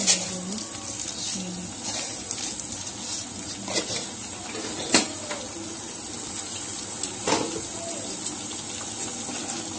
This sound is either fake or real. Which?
real